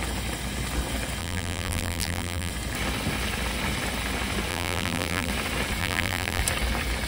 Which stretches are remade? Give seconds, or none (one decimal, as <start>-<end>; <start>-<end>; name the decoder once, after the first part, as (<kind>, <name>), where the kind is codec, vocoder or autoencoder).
1.2-2.5 (vocoder, BigVGAN v2); 4.5-5.3; 5.8-6.4